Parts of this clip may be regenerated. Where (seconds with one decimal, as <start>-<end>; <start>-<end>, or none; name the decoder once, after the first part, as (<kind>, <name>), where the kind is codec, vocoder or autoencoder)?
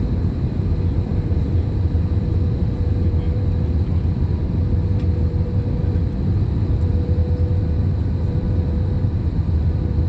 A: 0.0-7.2 (vocoder, BigVGAN v2); 8.2-10.1